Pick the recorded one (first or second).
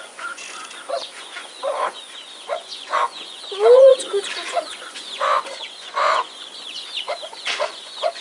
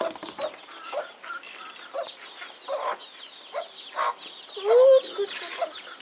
second